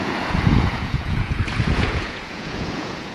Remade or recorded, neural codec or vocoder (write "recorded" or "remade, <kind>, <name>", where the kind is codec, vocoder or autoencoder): remade, vocoder, Vocos